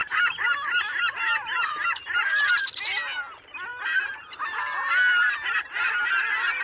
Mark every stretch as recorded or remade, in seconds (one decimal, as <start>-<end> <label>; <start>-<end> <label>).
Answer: 0.0-2.8 remade; 2.8-6.6 recorded

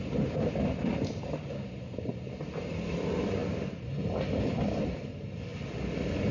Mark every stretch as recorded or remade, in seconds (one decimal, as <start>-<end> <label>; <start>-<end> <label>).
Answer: 0.0-3.4 remade; 3.4-4.6 recorded; 4.6-5.5 remade; 5.5-6.3 recorded

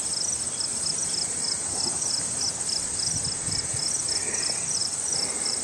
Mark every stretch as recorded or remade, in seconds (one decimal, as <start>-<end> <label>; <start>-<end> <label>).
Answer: 0.0-4.8 recorded; 4.8-5.6 remade

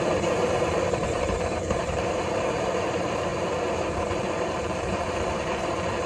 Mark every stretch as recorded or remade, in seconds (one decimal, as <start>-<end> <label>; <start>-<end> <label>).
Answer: 0.0-3.3 remade; 3.3-3.9 recorded; 3.9-6.1 remade

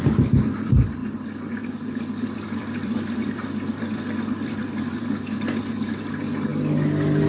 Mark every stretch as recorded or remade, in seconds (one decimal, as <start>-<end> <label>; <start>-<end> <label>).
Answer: 0.0-6.5 remade; 6.5-7.3 recorded

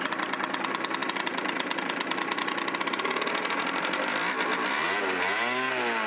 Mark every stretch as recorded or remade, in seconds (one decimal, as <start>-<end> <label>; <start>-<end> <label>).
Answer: 0.0-1.0 recorded; 1.0-4.7 remade; 4.7-6.1 recorded

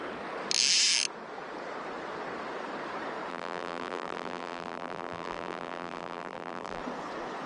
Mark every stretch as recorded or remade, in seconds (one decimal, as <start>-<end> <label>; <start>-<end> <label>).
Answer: 0.0-3.3 recorded; 3.3-6.8 remade; 6.8-7.5 recorded

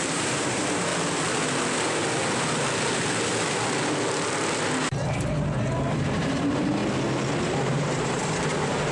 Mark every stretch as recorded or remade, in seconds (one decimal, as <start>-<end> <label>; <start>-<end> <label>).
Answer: 0.0-0.9 remade; 0.9-5.9 recorded; 5.9-6.8 remade; 6.8-7.4 recorded; 7.4-8.9 remade